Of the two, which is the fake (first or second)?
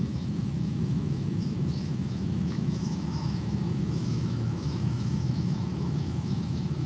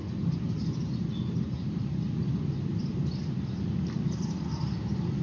first